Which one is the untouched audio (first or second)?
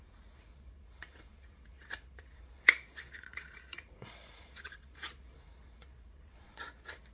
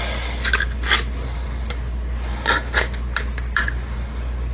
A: second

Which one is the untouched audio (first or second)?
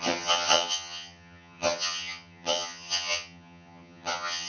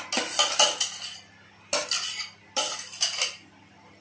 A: second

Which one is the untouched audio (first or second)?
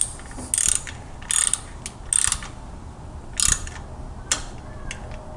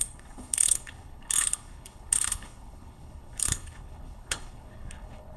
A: first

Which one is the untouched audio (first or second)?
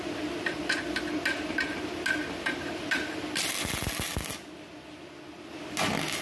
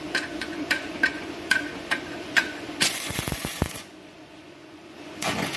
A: first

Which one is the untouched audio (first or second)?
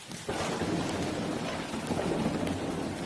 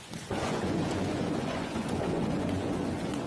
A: first